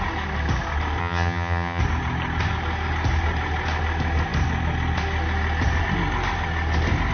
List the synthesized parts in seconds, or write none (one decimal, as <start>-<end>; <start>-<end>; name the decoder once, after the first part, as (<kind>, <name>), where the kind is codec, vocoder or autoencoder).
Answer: 1.0-1.8 (vocoder, HiFi-GAN)